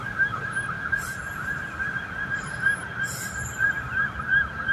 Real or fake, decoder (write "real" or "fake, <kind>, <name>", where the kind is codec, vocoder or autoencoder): real